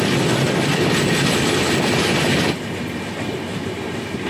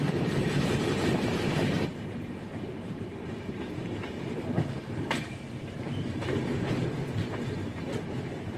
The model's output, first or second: second